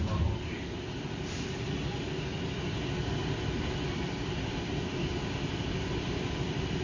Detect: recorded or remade recorded